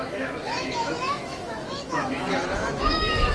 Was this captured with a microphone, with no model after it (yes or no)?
no